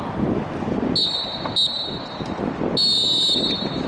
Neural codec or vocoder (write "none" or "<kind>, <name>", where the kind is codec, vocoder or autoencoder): none